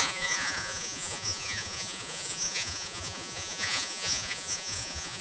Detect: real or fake fake